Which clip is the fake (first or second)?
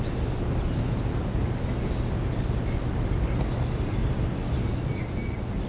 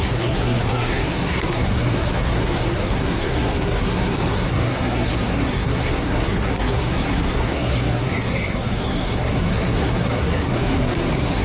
second